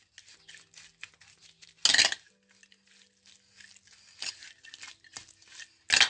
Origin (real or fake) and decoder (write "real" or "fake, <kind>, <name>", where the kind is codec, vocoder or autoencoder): real